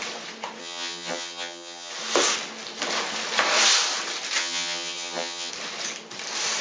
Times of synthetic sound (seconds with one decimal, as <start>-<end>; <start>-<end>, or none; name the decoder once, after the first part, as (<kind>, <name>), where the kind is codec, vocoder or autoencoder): 0.6-1.9 (vocoder, HiFi-GAN); 4.4-5.5